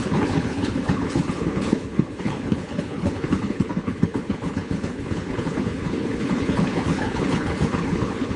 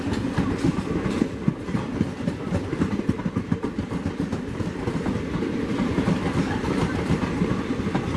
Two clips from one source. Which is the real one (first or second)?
second